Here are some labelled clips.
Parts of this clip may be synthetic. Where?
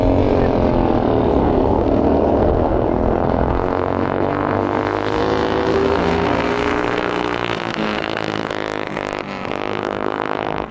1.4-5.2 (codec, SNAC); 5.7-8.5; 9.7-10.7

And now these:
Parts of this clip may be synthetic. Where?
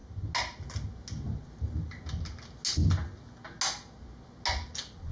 none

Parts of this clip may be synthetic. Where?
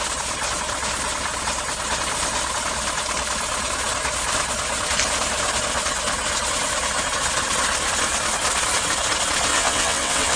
9.5-10.4 (vocoder, WaveNeXt)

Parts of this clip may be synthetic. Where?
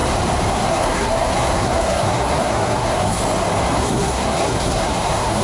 0.5-3.2 (codec, SNAC); 3.8-5.4